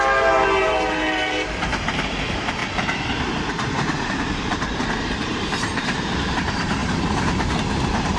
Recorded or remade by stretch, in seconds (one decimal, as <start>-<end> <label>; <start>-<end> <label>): 0.0-2.6 remade; 2.6-3.5 recorded; 3.5-8.2 remade